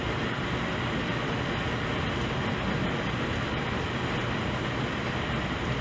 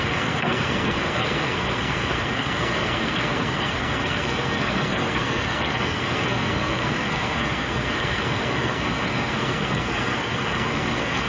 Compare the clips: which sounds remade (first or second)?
second